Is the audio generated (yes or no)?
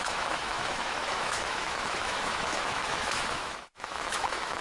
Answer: yes